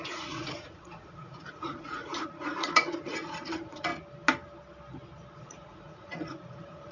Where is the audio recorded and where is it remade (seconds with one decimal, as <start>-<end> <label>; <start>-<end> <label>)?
0.0-3.9 remade; 3.9-5.4 recorded; 5.4-6.9 remade